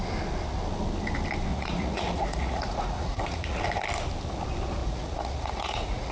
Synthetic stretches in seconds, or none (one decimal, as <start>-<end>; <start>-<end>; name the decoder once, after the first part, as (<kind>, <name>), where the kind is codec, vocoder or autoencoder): 1.5-3.6 (vocoder, Vocos); 4.8-6.1